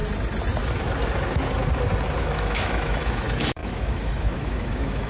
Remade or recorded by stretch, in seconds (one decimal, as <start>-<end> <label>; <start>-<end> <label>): 0.0-2.2 recorded; 2.2-5.1 remade